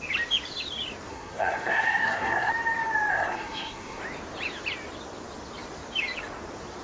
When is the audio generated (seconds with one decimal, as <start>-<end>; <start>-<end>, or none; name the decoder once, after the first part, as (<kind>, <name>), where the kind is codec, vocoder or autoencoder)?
1.1-2.5 (codec, SNAC); 3.1-4.0